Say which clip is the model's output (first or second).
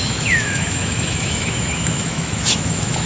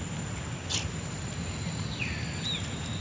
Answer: first